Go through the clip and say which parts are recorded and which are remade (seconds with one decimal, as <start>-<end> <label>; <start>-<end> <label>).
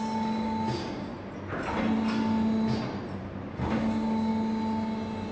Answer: 0.0-1.1 remade; 1.1-3.5 recorded; 3.5-4.3 remade; 4.3-5.3 recorded